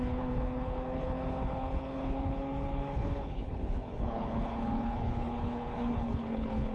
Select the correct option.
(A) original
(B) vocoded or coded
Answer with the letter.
B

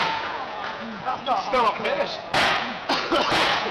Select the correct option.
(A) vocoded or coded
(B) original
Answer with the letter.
A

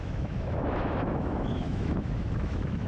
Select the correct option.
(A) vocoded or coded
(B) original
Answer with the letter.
A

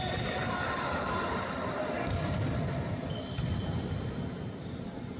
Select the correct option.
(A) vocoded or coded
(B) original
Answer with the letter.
B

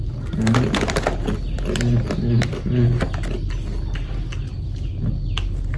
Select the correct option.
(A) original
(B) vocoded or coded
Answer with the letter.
A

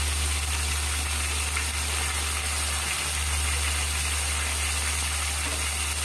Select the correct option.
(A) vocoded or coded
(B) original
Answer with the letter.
B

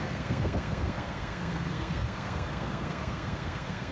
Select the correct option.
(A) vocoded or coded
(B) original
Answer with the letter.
A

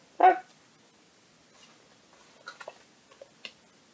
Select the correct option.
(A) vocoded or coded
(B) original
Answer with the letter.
B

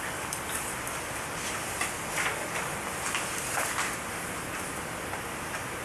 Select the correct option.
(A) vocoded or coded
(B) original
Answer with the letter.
B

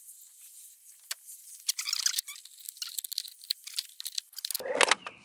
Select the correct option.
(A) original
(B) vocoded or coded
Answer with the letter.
A